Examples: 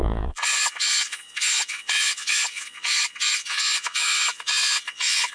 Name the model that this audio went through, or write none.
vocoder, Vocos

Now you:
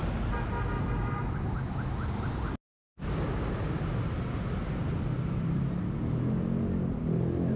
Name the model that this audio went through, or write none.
none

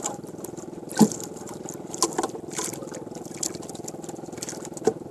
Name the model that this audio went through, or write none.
none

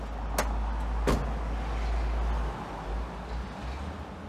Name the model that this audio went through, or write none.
none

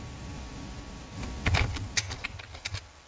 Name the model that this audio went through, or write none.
none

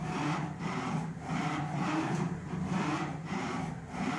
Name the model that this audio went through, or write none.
vocoder, BigVGAN v2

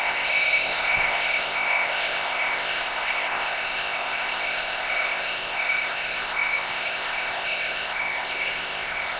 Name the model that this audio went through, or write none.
codec, ZipCodec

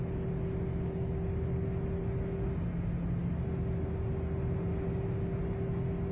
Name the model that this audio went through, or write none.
none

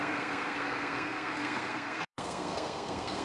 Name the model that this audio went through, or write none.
codec, SNAC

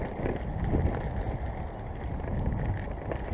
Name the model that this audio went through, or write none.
none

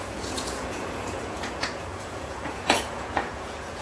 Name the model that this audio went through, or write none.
vocoder, Vocos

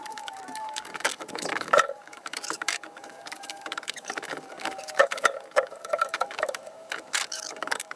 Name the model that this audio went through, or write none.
codec, DAC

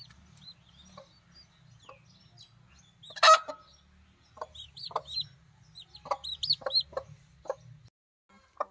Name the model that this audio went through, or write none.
none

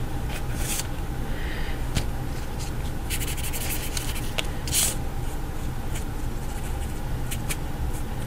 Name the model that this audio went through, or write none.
none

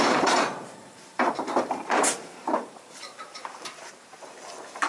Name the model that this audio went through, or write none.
vocoder, BigVGAN v2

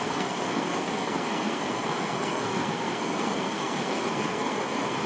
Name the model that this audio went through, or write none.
codec, SNAC